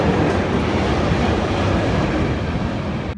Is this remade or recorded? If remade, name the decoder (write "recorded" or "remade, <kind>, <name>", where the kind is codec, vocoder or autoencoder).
recorded